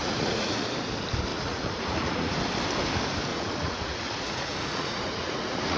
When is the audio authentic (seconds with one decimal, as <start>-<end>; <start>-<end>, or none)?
0.7-1.3; 2.4-3.3